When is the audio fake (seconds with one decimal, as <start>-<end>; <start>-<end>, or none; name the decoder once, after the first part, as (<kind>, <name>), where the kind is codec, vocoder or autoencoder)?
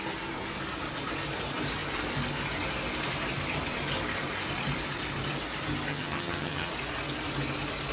5.9-6.7 (vocoder, HiFi-GAN)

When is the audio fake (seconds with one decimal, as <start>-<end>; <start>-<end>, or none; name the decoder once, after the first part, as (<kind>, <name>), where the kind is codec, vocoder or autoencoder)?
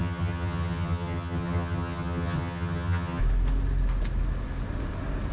0.0-3.2 (vocoder, HiFi-GAN)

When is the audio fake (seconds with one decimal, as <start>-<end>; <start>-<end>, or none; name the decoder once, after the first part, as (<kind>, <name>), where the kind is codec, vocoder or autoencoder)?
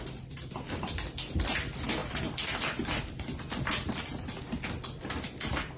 none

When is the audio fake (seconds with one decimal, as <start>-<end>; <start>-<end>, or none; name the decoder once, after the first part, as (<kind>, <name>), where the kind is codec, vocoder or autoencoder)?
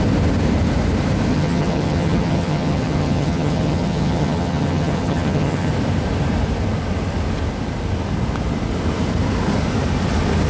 1.3-5.7 (vocoder, HiFi-GAN)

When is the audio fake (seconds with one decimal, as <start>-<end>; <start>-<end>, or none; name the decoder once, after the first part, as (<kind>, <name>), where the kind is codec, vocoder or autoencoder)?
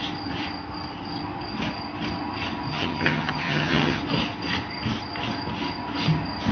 2.7-4.0 (vocoder, HiFi-GAN)